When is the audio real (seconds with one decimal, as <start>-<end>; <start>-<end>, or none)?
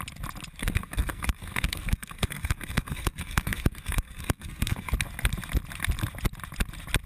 0.0-0.6; 4.9-7.1